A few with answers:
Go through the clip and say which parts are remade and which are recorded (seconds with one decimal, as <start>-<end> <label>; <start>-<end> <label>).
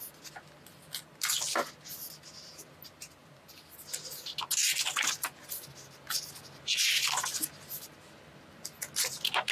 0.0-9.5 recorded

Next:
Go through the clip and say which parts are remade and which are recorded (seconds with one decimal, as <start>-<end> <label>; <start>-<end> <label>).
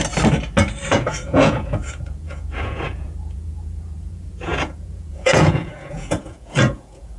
0.0-0.9 recorded; 0.9-7.2 remade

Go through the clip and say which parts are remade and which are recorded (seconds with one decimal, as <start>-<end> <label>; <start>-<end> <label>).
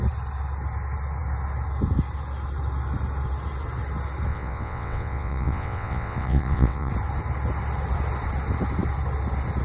0.0-4.3 recorded; 4.3-6.9 remade; 6.9-9.6 recorded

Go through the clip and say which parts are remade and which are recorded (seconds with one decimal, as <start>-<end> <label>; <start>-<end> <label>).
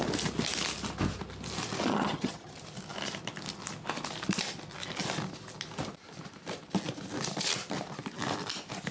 0.0-1.9 recorded; 1.9-2.5 remade; 2.5-8.9 recorded